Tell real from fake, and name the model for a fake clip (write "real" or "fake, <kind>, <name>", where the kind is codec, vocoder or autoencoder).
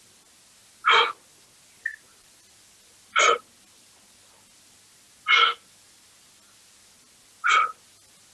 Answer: real